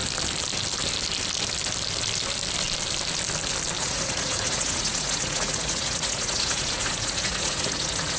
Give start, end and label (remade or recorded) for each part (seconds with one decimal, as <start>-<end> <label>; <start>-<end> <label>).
0.0-3.8 recorded; 3.8-8.2 remade